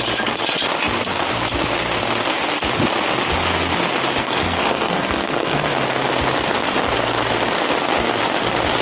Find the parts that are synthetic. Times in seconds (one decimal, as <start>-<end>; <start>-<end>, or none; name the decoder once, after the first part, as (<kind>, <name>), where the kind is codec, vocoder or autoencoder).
4.2-5.7 (codec, SNAC)